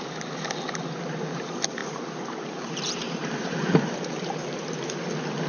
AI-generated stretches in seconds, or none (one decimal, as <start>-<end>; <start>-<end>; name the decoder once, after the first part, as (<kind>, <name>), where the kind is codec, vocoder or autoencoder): 1.8-4.4 (vocoder, BigVGAN v2)